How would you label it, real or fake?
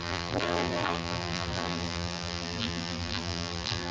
fake